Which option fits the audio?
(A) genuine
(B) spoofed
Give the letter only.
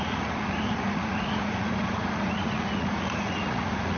B